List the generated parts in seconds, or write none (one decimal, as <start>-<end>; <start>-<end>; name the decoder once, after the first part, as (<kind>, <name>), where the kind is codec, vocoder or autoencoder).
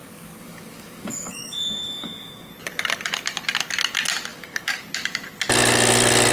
0.0-2.5 (codec, DAC); 4.3-4.8